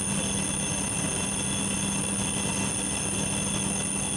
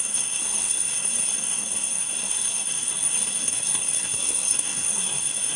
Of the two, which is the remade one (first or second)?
second